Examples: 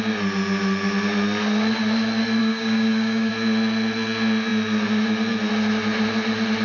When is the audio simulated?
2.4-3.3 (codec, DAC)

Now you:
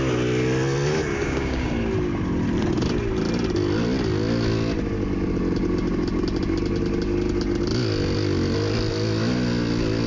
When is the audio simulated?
1.1-1.7 (codec, DAC)